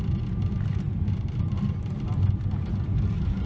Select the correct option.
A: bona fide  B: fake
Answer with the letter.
A